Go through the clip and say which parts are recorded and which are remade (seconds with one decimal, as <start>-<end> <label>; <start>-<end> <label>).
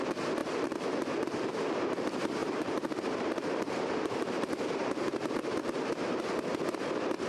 0.0-0.4 recorded; 0.4-1.5 remade; 1.5-2.4 recorded; 2.4-6.2 remade; 6.2-7.3 recorded